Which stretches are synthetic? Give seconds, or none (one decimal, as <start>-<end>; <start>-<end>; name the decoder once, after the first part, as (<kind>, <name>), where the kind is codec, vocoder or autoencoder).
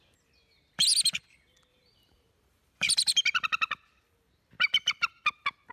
1.7-2.9 (vocoder, BigVGAN v2)